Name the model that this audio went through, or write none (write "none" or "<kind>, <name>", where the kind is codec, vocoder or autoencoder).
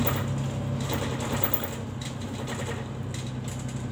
none